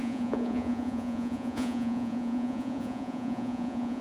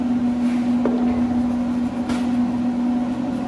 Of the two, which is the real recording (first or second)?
second